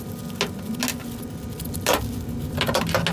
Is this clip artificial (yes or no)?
no